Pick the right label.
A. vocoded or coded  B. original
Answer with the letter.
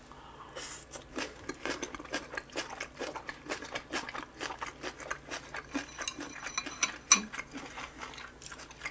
B